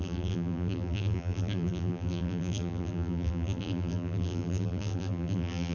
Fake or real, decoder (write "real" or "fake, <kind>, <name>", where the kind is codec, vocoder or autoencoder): fake, vocoder, BigVGAN v2